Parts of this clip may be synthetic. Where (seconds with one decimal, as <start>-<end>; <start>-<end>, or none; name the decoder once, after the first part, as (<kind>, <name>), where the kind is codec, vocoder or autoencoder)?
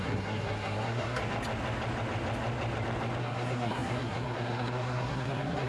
0.0-1.2 (codec, SNAC); 3.2-5.7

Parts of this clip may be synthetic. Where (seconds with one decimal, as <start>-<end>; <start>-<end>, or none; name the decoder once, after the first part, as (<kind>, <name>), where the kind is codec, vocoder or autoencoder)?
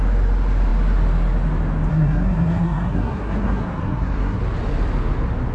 1.9-4.4 (codec, SNAC)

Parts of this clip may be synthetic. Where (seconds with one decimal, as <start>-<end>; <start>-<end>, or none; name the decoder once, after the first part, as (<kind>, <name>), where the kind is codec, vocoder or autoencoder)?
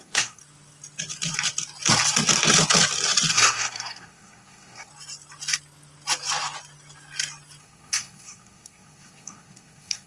0.0-0.4 (codec, SNAC); 3.3-4.9; 7.6-10.1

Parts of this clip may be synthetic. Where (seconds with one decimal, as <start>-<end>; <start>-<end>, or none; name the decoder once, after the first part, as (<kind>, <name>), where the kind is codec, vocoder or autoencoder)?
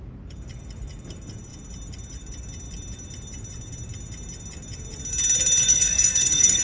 5.7-6.6 (codec, SNAC)